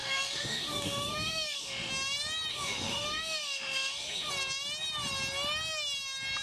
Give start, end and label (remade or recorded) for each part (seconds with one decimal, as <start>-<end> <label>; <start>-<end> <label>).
0.0-1.9 remade; 1.9-2.5 recorded; 2.5-4.3 remade; 4.3-6.4 recorded